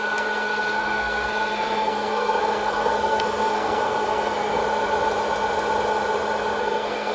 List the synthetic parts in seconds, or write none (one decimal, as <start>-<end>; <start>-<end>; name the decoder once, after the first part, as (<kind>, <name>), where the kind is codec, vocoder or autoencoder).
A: 0.0-4.6 (codec, SNAC); 6.6-7.1